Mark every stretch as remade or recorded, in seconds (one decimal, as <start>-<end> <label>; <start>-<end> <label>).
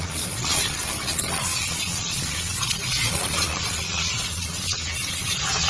0.0-5.7 remade